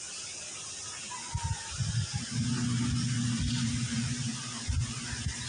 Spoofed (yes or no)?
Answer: no